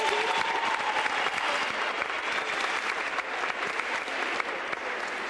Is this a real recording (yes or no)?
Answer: yes